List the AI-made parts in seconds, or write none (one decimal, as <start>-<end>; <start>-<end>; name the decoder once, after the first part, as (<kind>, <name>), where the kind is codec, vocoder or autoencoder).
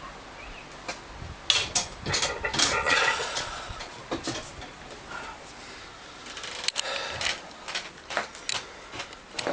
2.8-4.0 (vocoder, Vocos)